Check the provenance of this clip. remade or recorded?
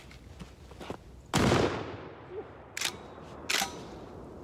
recorded